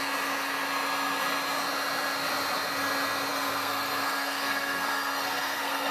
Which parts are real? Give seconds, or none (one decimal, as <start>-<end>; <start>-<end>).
0.0-3.3